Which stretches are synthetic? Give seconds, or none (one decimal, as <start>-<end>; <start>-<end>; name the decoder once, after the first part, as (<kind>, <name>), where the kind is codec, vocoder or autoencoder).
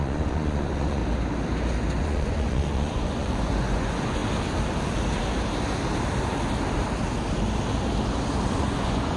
0.0-1.0 (vocoder, Vocos); 2.0-4.2; 8.6-9.2